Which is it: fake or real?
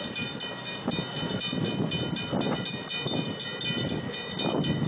real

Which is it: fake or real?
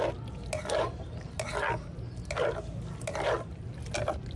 real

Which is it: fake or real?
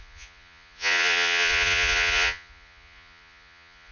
fake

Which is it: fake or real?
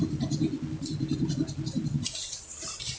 real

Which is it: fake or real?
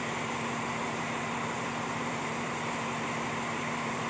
fake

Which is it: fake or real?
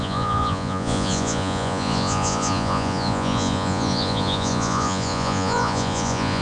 fake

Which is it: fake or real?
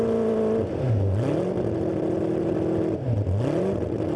real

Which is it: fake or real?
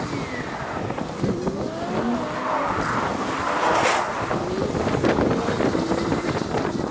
real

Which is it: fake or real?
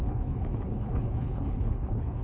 fake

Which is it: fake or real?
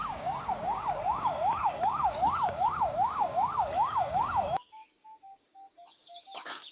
fake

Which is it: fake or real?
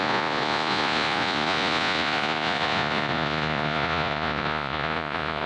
fake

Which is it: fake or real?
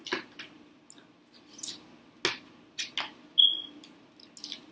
real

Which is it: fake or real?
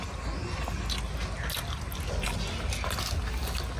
real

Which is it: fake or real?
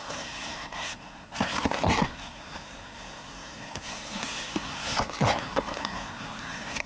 fake